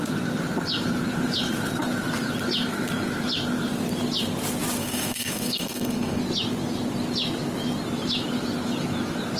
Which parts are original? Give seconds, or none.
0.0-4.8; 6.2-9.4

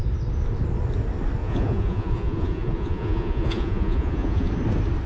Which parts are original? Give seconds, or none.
0.0-1.4; 4.5-5.1

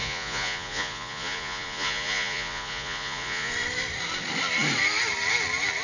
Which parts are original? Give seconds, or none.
3.5-5.8

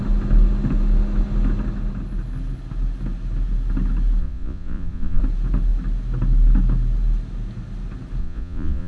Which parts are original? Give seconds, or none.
0.0-4.2; 5.2-8.2

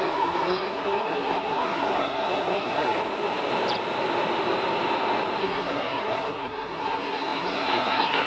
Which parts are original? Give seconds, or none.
3.0-5.4

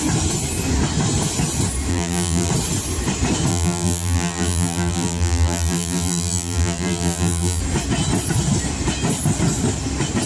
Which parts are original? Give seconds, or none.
0.0-1.9; 2.5-3.5; 7.6-10.3